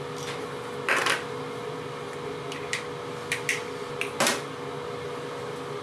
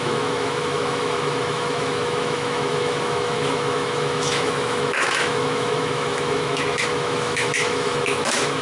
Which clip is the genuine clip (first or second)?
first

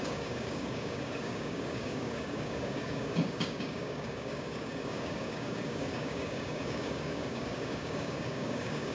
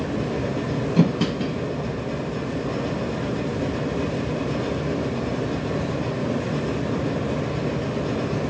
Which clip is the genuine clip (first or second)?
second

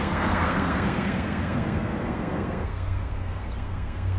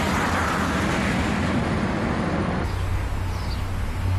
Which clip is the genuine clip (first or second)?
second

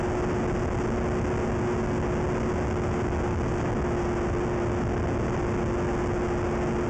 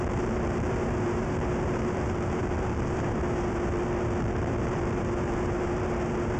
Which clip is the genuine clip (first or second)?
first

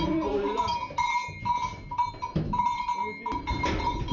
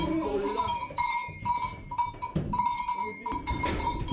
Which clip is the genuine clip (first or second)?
first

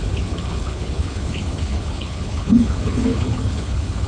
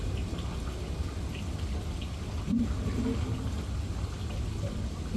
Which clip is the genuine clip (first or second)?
second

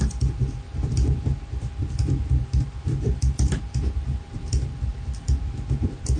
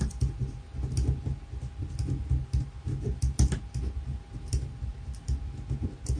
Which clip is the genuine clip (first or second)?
second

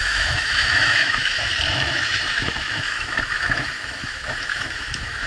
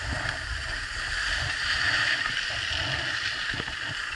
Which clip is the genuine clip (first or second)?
second